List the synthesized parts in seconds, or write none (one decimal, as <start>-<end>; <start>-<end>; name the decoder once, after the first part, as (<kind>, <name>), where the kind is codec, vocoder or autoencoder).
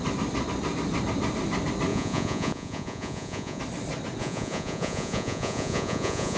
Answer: 1.9-3.6 (vocoder, Vocos); 4.2-6.4